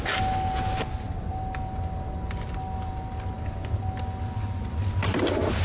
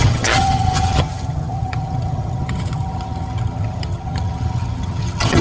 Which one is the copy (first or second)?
second